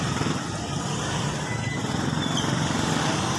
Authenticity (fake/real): real